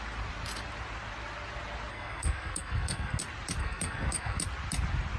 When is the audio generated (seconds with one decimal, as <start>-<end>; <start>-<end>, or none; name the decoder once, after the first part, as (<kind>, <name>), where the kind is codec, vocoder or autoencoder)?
1.9-3.2 (codec, SNAC); 3.6-4.4